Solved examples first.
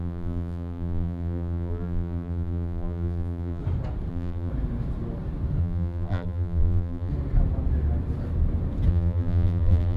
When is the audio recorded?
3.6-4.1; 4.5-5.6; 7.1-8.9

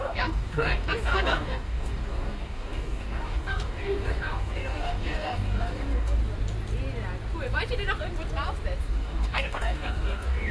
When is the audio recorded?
6.2-8.8

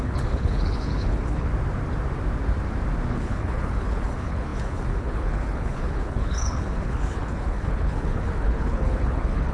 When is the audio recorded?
1.5-3.1

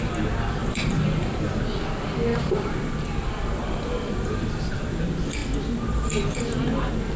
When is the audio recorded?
0.0-0.6; 1.8-2.3; 5.0-7.2

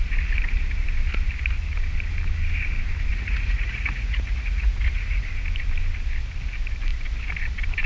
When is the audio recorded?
0.0-3.1; 5.3-7.9

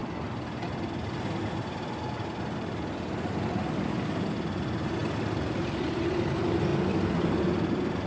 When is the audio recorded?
0.0-8.1